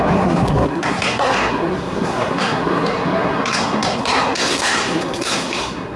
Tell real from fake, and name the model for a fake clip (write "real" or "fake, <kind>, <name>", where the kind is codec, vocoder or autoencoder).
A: fake, codec, SNAC